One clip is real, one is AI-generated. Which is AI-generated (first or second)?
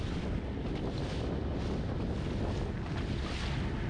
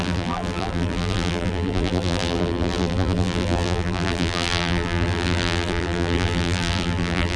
second